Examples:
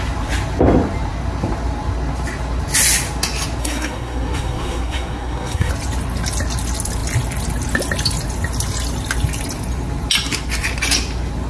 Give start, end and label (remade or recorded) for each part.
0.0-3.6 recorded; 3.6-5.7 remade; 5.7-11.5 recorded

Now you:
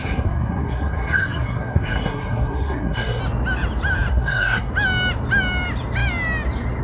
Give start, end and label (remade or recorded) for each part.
0.0-3.2 remade; 3.2-4.1 recorded; 4.1-4.7 remade; 4.7-6.8 recorded

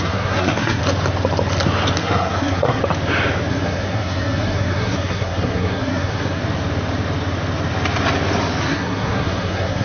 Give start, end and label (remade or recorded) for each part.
0.0-0.8 remade; 0.8-2.0 recorded; 2.0-2.8 remade; 2.8-3.5 recorded; 3.5-6.4 remade; 6.4-8.6 recorded; 8.6-9.8 remade

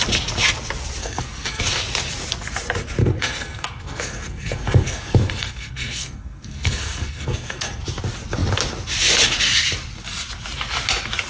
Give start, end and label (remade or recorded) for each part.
0.0-1.0 recorded; 1.0-1.6 remade; 1.6-3.0 recorded; 3.0-7.8 remade; 7.8-11.3 recorded

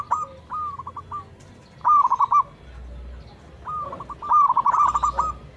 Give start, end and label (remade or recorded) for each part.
0.0-5.6 recorded

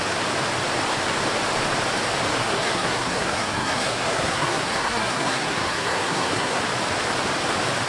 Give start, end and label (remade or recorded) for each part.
0.0-2.4 recorded; 2.4-6.6 remade; 6.6-7.9 recorded

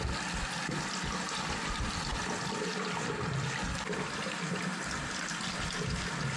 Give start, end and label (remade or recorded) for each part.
0.0-6.4 recorded